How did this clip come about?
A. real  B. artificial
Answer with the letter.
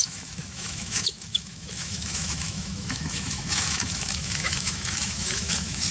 B